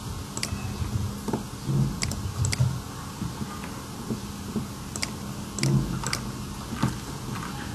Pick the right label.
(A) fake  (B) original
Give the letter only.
B